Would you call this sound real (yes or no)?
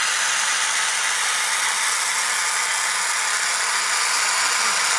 yes